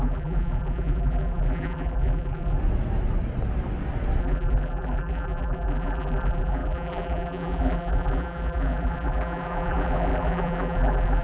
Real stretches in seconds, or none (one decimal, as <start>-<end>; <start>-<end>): 2.6-4.2